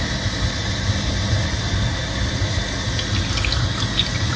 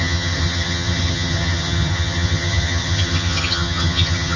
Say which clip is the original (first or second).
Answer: first